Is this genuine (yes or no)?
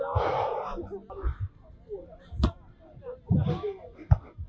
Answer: yes